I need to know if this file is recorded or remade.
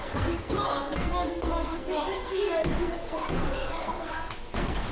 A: remade